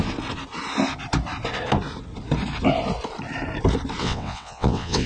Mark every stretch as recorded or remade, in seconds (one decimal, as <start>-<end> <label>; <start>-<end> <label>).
0.0-4.0 recorded; 4.0-5.1 remade